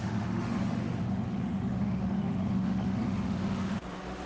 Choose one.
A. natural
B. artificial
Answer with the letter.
B